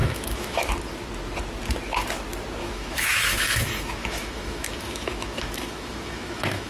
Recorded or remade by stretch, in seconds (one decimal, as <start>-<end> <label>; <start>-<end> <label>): 0.0-0.7 remade; 0.7-2.6 recorded; 2.6-6.7 remade